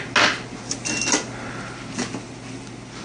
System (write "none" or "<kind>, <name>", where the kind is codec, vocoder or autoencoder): none